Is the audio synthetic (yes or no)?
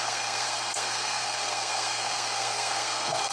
yes